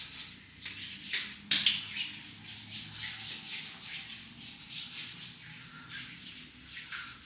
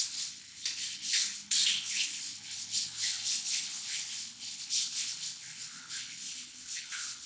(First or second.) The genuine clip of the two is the first